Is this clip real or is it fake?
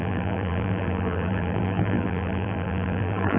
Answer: fake